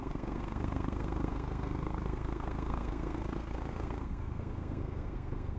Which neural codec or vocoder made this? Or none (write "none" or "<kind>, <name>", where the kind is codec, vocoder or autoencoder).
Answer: codec, SNAC